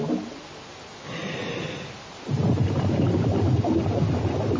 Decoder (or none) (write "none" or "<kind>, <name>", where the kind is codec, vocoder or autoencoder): none